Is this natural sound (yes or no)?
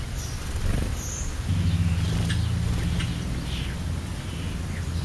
yes